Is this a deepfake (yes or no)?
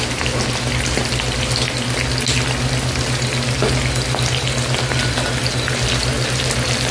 no